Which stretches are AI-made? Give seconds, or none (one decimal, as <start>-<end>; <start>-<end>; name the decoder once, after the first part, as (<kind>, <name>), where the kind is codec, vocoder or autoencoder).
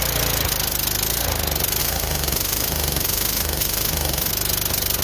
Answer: 1.8-4.3 (autoencoder, DAC-VAE)